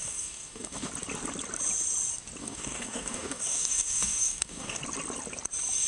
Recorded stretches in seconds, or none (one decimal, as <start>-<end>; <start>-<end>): 0.9-2.4; 4.8-5.9